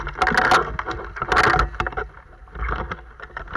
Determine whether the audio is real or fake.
real